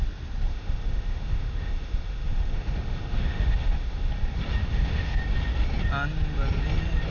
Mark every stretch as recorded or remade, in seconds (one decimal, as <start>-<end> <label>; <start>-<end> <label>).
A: 0.0-0.5 recorded; 0.5-4.1 remade; 4.1-4.6 recorded; 4.6-5.2 remade; 5.2-7.1 recorded